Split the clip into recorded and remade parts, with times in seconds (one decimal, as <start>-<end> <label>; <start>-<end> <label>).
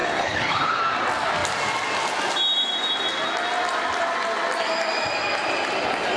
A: 0.0-0.8 remade; 0.8-6.2 recorded